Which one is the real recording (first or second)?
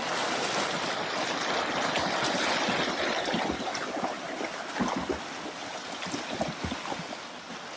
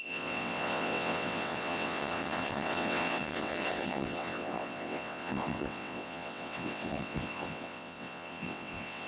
first